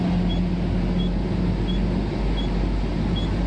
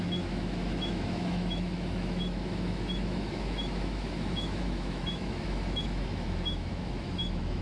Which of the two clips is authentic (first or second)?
first